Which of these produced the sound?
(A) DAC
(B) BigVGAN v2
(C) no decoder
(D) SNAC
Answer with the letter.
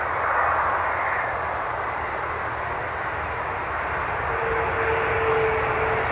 C